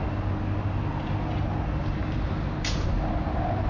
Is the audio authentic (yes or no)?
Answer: yes